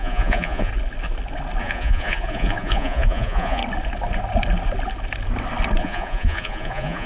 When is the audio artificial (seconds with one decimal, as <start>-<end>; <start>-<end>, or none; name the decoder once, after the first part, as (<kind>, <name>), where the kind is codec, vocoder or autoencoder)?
0.0-0.7 (vocoder, Vocos); 1.6-3.6; 5.8-7.1